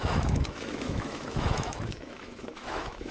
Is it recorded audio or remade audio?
remade